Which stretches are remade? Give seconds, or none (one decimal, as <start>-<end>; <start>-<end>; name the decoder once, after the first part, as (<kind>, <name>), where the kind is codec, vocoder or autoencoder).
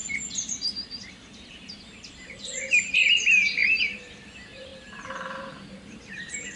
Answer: 0.0-6.6 (vocoder, BigVGAN v2)